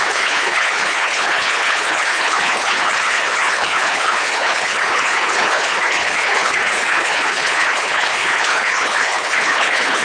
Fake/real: fake